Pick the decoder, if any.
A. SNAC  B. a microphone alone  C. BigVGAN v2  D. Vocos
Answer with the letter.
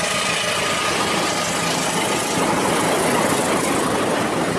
B